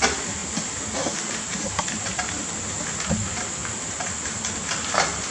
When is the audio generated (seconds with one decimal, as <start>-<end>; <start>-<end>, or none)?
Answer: none